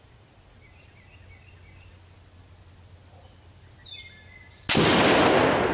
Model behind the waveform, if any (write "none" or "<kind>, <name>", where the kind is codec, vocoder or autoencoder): none